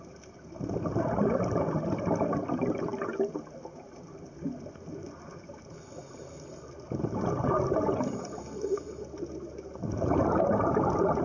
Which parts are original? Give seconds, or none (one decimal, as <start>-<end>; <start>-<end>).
0.0-11.2

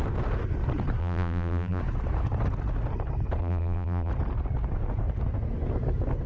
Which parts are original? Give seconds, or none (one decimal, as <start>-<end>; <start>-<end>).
0.0-1.0; 1.8-3.4; 4.1-6.3

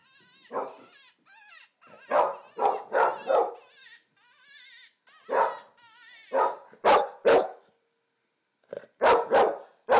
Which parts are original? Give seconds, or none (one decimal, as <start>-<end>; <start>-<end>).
0.0-10.0

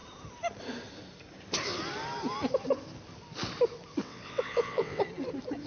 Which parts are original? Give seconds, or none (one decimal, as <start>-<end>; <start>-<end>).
0.0-4.0; 5.0-5.7

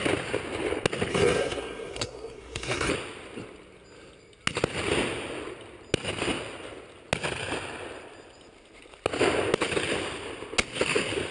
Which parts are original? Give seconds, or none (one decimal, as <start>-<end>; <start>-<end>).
0.0-1.1; 2.9-11.3

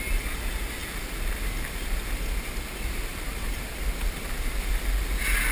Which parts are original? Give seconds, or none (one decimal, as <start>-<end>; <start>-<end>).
0.0-3.1; 4.7-5.5

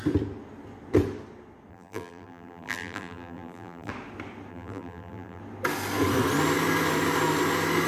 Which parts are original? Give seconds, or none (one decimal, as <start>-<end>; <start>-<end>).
0.0-1.7; 3.9-4.5; 5.4-7.9